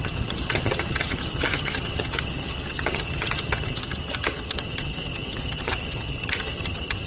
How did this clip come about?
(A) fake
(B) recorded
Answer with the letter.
A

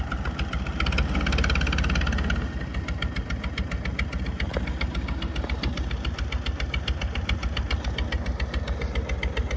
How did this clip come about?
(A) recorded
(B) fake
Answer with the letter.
A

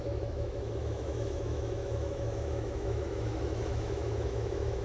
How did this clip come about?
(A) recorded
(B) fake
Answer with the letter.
B